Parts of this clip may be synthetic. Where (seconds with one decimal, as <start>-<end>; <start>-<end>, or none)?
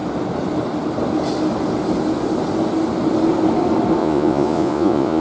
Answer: 4.0-5.2